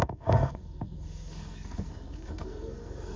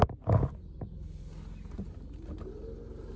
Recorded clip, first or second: second